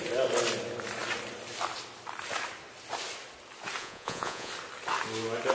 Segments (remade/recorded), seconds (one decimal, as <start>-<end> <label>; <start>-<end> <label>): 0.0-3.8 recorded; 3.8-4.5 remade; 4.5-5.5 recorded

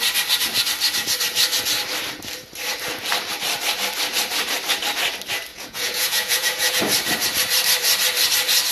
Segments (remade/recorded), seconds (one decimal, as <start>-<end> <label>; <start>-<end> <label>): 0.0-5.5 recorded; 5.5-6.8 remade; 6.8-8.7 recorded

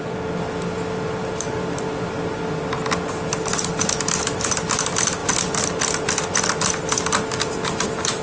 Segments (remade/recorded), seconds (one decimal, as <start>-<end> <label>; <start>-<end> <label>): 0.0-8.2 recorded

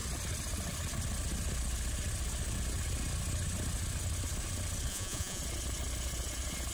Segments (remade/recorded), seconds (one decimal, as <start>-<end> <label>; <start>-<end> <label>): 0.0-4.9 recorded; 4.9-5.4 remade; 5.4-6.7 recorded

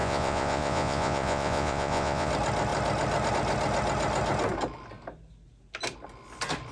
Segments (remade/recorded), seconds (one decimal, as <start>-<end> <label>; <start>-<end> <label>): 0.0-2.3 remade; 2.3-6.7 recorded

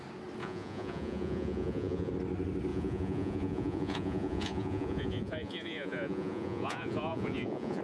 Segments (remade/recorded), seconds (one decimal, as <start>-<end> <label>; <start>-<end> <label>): 0.0-0.4 recorded; 0.4-2.1 remade; 2.1-2.7 recorded; 2.7-7.8 remade

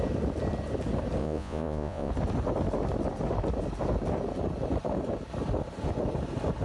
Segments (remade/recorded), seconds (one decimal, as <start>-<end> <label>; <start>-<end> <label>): 0.0-1.2 recorded; 1.2-2.1 remade; 2.1-6.6 recorded

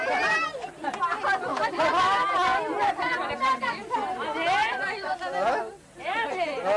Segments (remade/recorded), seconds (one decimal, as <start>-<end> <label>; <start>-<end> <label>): 0.0-4.6 recorded; 4.6-5.2 remade; 5.2-6.8 recorded